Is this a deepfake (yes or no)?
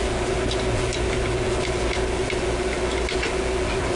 no